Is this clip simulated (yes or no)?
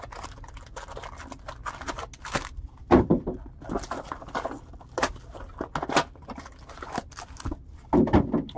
no